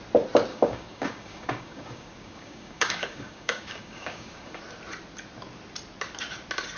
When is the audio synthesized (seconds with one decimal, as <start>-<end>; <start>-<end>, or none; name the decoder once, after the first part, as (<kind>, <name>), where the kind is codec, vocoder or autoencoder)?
0.5-4.6 (codec, DAC)

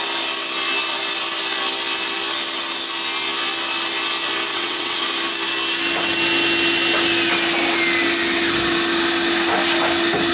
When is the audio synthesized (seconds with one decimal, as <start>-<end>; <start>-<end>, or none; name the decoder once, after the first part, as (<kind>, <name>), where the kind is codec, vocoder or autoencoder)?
4.5-5.0 (vocoder, WaveNeXt)

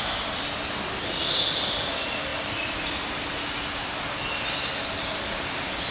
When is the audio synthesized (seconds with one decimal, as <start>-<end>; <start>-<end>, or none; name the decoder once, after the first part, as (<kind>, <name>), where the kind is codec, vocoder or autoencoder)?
none

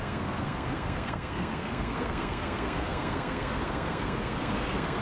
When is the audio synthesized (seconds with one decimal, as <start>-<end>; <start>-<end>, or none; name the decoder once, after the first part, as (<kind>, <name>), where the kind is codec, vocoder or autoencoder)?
0.0-5.0 (codec, SNAC)

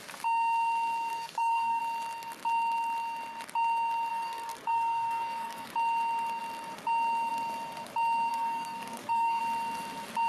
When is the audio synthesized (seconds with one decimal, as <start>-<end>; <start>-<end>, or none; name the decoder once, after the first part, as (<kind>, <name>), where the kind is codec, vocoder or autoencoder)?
1.1-1.8 (codec, SNAC); 4.1-5.7; 8.3-9.4